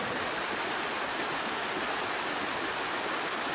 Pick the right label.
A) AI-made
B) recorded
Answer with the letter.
B